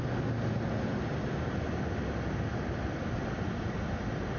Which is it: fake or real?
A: real